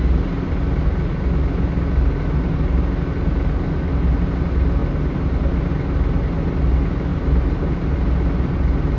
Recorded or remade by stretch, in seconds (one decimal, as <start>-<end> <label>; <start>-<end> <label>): 0.0-9.0 recorded